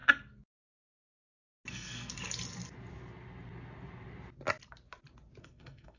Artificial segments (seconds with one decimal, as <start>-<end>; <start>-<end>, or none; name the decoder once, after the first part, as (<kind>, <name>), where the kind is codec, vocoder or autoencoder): 1.7-2.1 (codec, SNAC); 5.4-6.0